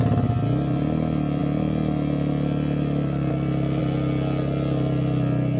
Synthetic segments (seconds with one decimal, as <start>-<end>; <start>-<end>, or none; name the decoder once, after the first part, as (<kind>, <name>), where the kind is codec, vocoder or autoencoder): none